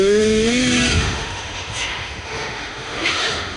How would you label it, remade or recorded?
remade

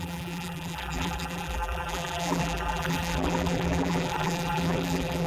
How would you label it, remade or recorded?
remade